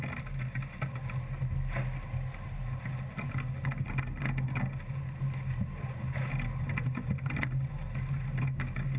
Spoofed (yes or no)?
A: no